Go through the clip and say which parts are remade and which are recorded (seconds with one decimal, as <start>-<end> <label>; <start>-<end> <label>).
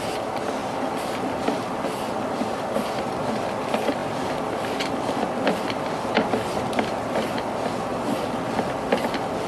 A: 0.0-0.6 recorded; 0.6-2.7 remade; 2.7-7.9 recorded; 7.9-8.7 remade; 8.7-9.5 recorded